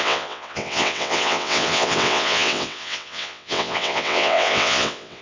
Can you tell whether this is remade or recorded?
remade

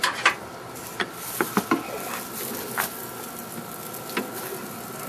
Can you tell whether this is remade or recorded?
recorded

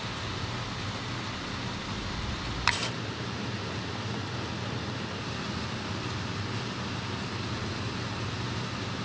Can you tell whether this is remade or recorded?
recorded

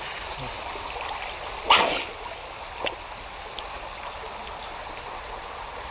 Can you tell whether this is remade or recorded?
recorded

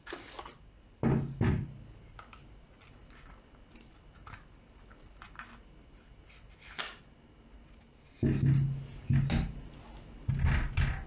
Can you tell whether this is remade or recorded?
recorded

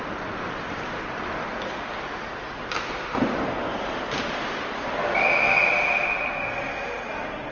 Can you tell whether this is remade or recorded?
recorded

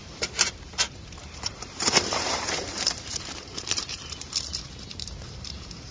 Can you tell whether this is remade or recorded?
remade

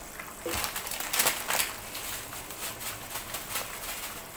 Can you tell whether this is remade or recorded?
recorded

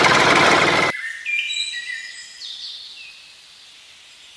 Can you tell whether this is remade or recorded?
recorded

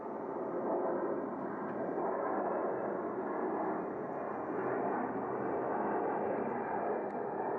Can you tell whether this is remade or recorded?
recorded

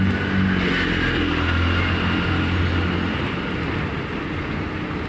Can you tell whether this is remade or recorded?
recorded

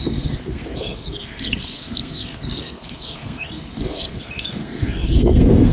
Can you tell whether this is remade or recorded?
remade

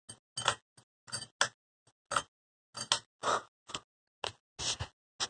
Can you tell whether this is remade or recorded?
recorded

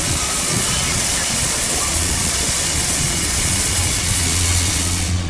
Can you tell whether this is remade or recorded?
remade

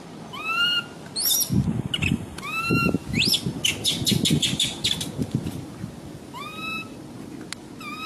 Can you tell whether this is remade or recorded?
recorded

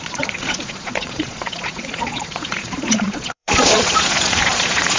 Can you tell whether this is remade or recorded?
remade